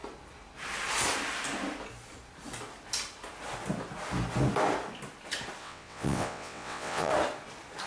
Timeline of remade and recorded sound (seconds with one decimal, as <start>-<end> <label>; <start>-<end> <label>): 0.0-5.6 recorded; 5.6-7.1 remade; 7.1-7.9 recorded